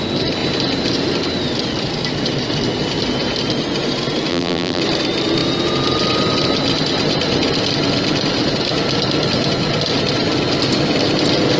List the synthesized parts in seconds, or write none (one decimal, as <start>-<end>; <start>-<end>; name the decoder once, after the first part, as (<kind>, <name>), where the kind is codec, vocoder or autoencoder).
4.3-4.8 (vocoder, BigVGAN v2)